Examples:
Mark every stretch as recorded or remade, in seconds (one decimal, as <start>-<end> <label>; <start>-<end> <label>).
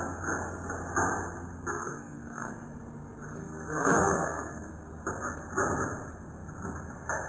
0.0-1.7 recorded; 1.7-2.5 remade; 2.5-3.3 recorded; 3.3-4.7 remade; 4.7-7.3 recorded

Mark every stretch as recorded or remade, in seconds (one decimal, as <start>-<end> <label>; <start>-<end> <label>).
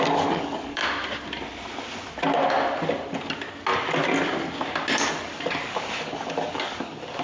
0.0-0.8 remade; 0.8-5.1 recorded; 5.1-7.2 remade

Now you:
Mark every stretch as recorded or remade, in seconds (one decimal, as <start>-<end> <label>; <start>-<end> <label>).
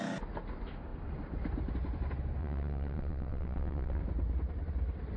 0.0-2.4 recorded; 2.4-4.0 remade; 4.0-5.2 recorded